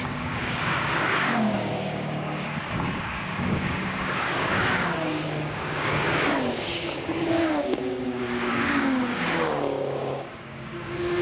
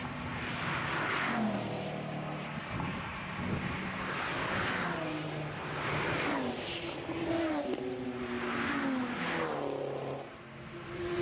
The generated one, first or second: first